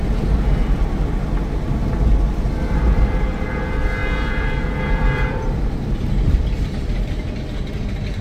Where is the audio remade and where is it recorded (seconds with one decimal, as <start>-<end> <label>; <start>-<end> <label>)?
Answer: 0.0-4.0 recorded; 4.0-7.1 remade; 7.1-8.2 recorded